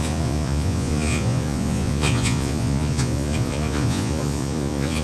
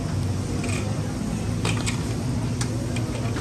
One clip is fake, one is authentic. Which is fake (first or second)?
first